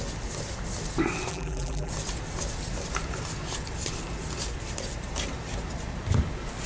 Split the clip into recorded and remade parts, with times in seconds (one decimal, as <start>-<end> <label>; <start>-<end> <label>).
0.0-1.3 recorded; 1.3-1.9 remade; 1.9-6.7 recorded